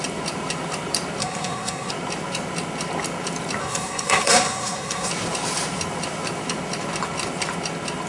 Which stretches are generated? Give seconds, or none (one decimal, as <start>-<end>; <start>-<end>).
1.2-1.9; 3.6-5.1